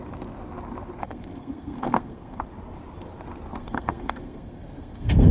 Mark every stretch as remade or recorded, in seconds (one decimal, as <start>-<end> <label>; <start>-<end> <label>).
0.0-1.0 recorded; 1.0-2.4 remade; 2.4-3.6 recorded; 3.6-5.3 remade